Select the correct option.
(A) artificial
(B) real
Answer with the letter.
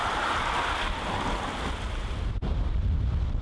B